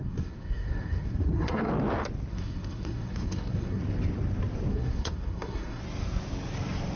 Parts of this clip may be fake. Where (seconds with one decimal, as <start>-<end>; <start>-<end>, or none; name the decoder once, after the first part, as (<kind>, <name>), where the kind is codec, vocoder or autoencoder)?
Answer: 0.0-1.7 (codec, SNAC); 2.3-3.8; 4.7-5.8